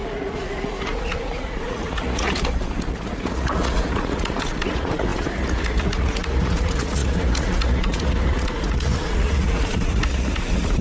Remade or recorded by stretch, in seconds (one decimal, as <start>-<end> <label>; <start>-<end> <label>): 0.0-10.8 remade